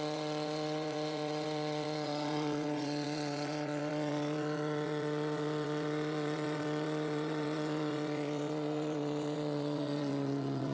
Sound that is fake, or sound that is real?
fake